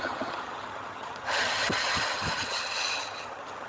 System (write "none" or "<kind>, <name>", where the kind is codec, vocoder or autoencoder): vocoder, HiFi-GAN